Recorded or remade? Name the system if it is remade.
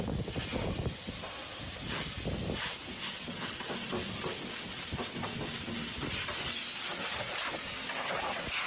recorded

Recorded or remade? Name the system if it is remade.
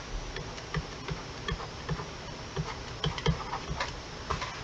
recorded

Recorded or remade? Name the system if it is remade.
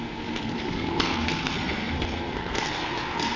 remade, codec, SNAC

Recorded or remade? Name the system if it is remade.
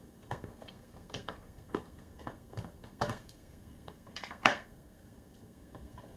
remade, codec, SNAC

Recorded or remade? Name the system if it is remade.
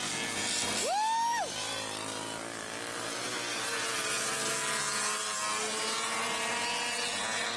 recorded